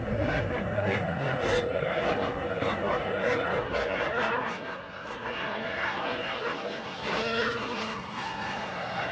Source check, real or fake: fake